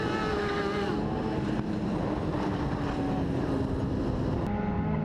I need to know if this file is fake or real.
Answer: real